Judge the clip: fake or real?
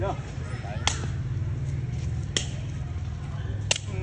real